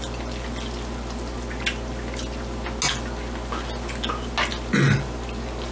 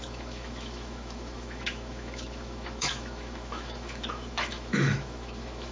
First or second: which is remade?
second